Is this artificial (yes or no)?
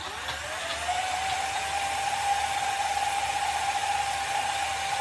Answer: no